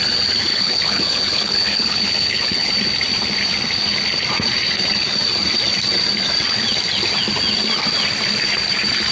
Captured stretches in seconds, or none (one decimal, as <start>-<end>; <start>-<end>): 0.0-0.5; 2.7-9.1